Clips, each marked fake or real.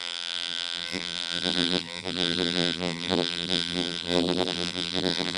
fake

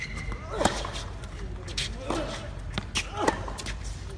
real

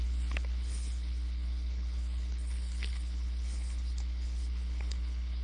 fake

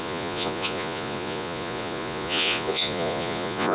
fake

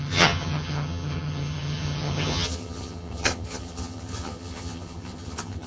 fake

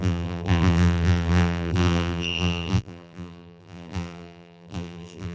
fake